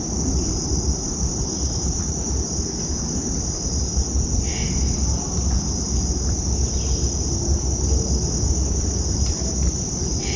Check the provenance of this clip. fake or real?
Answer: real